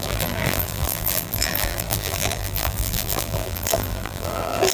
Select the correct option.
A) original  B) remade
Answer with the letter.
B